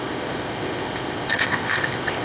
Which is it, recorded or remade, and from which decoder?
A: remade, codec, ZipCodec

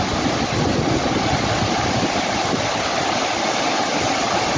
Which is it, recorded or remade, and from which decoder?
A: recorded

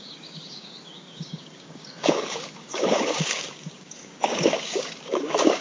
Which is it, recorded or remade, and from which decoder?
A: remade, codec, DAC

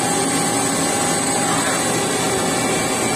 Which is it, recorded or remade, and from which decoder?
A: recorded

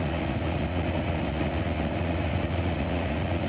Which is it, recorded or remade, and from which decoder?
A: remade, vocoder, Vocos